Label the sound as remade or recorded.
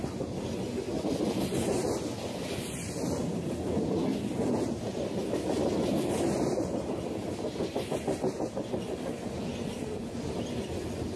recorded